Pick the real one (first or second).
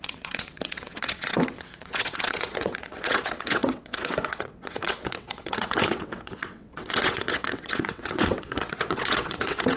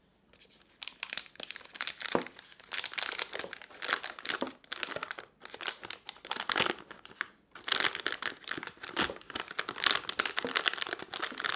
second